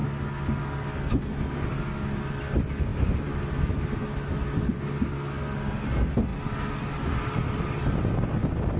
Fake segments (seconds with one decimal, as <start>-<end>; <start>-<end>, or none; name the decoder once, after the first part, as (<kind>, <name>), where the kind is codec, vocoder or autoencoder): none